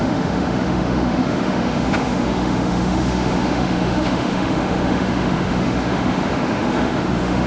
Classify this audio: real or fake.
fake